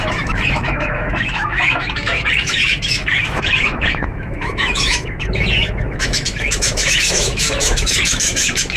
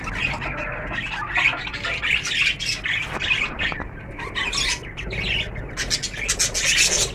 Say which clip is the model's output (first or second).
first